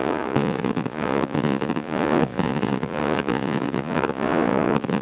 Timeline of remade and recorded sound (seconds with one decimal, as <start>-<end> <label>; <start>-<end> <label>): 0.0-5.0 remade